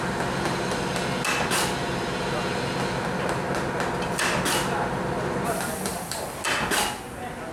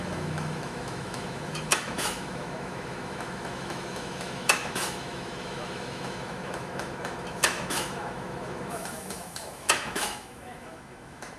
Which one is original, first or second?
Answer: first